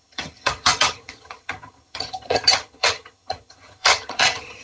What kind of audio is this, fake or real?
fake